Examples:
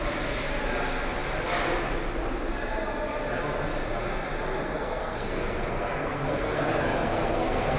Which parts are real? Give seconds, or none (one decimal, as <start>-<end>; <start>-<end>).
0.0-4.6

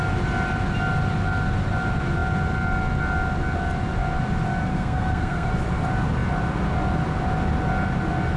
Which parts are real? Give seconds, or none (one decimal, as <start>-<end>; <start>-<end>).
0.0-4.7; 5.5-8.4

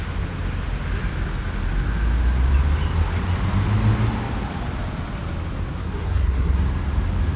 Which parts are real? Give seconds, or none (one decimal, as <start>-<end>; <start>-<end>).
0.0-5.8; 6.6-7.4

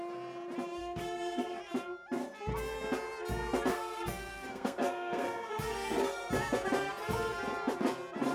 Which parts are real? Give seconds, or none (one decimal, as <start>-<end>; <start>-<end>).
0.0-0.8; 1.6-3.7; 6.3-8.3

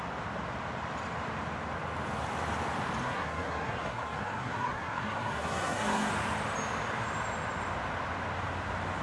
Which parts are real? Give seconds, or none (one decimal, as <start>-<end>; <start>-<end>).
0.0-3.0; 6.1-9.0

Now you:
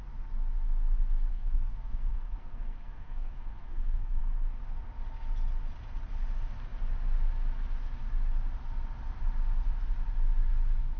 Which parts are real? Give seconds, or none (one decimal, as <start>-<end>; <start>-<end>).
0.0-1.3; 4.2-11.0

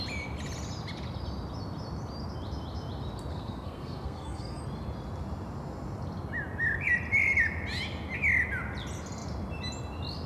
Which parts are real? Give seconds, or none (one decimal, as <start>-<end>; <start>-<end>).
0.0-3.3; 4.6-10.3

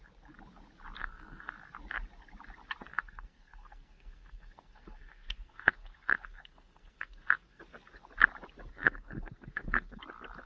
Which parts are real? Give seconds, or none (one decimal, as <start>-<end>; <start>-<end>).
0.0-1.0; 1.5-2.9; 7.6-8.7; 10.0-10.5